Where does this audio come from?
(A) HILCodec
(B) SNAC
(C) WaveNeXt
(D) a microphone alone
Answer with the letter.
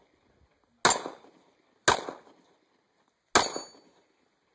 D